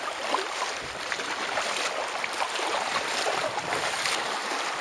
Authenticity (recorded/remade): recorded